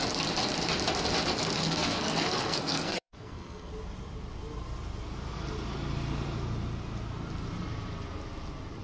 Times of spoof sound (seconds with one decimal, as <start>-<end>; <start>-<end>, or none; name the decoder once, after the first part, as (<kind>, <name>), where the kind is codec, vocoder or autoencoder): 1.6-3.7 (codec, SNAC)

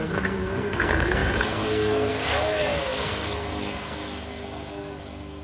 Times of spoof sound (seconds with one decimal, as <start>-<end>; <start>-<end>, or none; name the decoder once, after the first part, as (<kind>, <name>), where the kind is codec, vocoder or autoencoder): 0.0-5.4 (codec, SNAC)

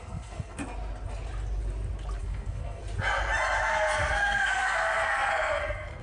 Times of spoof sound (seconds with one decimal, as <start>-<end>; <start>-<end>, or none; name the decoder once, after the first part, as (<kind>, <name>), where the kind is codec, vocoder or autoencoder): 0.0-0.6 (codec, SNAC); 2.2-2.8; 3.6-6.0

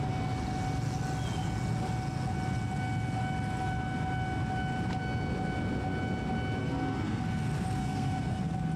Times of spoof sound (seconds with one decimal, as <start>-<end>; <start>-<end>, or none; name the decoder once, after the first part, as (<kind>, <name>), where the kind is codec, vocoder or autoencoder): 6.6-7.2 (codec, SNAC); 7.8-8.4

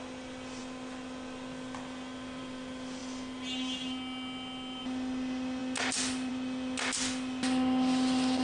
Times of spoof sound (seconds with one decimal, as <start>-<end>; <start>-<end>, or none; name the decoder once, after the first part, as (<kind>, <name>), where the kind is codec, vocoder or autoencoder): none

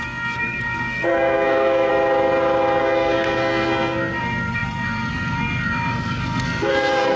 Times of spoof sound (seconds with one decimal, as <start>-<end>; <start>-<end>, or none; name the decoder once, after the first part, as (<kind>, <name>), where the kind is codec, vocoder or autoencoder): 0.0-1.9 (codec, SNAC); 2.8-7.2

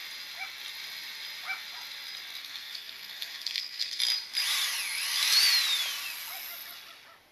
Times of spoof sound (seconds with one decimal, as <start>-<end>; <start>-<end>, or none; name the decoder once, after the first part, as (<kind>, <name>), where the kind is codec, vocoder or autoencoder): 2.4-4.0 (codec, SNAC)

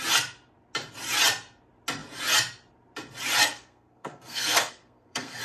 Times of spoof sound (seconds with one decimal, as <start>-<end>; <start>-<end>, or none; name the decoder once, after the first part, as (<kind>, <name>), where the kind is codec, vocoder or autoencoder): 3.4-5.4 (codec, SNAC)